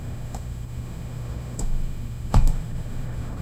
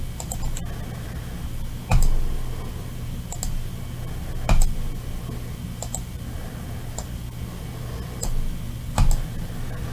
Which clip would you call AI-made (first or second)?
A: first